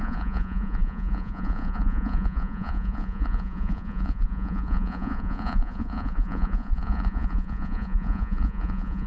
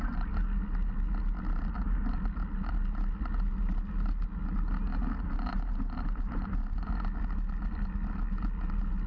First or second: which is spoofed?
first